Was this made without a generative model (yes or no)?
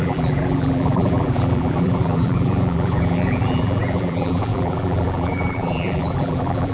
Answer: no